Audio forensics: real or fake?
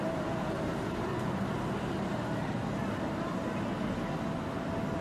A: real